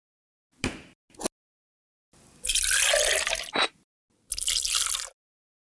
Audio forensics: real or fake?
real